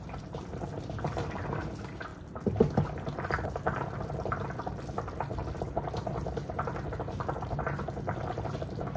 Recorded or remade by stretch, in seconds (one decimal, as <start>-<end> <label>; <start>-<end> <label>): 0.0-9.0 recorded